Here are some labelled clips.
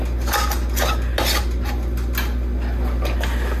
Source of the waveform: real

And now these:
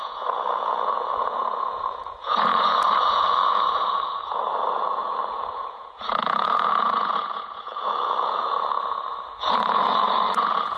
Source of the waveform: fake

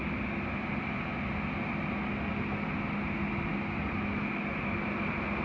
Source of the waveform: real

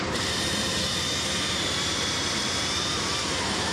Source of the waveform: fake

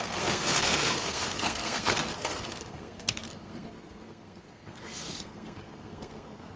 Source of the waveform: fake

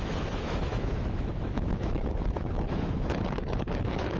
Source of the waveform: fake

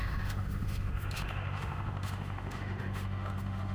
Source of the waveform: fake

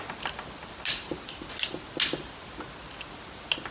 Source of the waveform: real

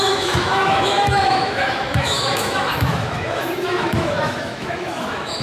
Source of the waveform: fake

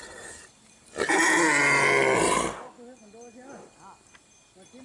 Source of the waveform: real